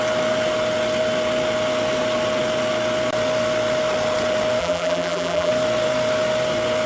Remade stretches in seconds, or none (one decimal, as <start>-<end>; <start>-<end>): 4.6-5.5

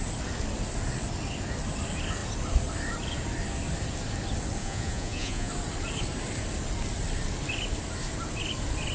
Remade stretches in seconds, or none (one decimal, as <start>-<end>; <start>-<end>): 4.6-5.5

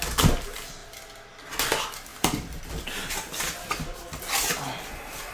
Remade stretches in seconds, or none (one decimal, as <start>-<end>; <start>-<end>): 0.8-1.3; 2.1-2.6